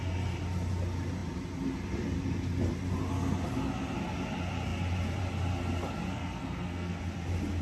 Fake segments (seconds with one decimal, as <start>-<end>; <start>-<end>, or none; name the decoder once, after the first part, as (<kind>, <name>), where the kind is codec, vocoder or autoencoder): 6.1-7.0 (codec, SNAC)